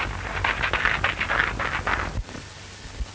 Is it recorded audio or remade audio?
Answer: recorded